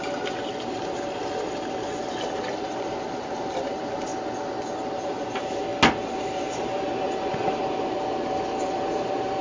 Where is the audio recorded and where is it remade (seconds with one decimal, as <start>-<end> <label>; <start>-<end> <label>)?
0.0-4.1 remade; 4.1-4.9 recorded; 4.9-5.7 remade; 5.7-6.2 recorded; 6.2-9.4 remade